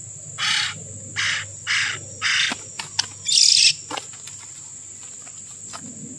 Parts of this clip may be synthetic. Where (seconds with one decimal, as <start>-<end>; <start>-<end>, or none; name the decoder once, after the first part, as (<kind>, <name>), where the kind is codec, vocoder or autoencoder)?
none